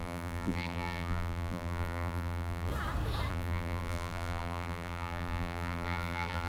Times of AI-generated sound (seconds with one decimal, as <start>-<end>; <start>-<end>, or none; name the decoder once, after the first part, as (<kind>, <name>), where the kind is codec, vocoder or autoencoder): 0.0-2.7 (vocoder, BigVGAN v2); 3.3-6.5